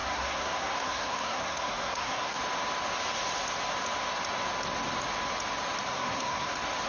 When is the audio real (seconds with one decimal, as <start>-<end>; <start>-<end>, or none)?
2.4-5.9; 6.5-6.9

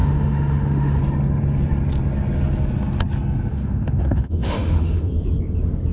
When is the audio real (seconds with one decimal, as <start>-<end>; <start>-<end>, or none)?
1.0-3.5; 5.1-5.9

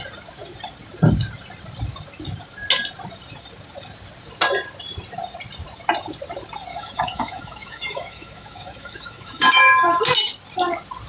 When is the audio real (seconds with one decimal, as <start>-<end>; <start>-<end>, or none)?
0.0-6.7; 10.0-11.1

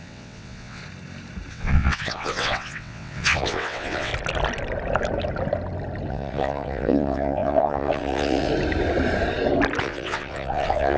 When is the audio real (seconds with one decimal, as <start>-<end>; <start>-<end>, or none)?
0.8-1.5; 4.1-6.1; 8.5-9.8